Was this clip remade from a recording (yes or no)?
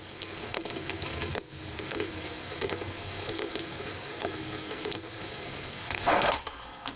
yes